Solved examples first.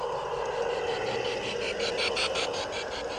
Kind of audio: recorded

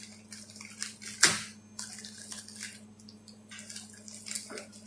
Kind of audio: recorded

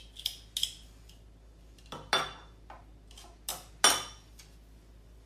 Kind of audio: recorded